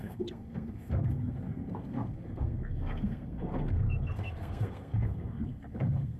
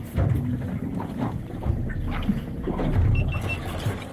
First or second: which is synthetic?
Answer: first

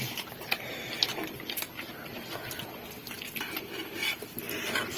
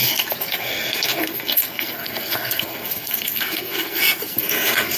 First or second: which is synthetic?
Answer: second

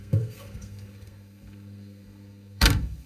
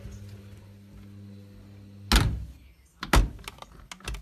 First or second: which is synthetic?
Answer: first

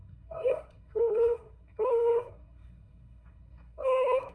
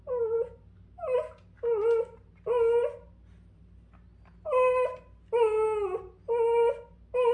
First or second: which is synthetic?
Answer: first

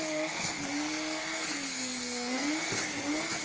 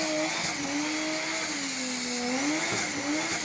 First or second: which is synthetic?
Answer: first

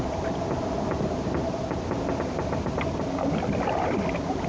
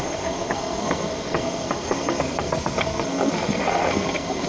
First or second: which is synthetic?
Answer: second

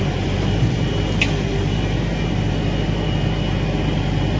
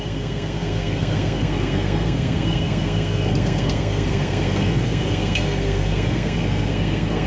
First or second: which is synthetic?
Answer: second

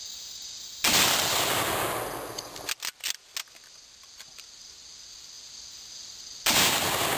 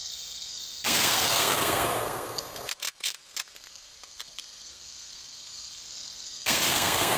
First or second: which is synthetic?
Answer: second